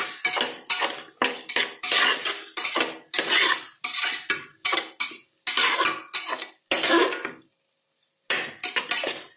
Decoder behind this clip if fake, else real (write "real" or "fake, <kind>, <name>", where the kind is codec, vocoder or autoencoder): real